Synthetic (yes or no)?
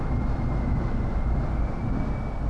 no